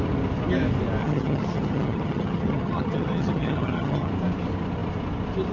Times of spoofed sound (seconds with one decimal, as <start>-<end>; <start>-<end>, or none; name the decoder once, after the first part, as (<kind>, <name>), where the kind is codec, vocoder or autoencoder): 1.0-4.1 (vocoder, HiFi-GAN)